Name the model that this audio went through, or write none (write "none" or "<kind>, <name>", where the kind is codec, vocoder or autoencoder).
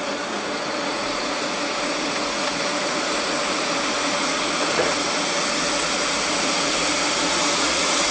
vocoder, Vocos